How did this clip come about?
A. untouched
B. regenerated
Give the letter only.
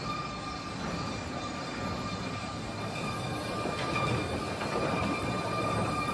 A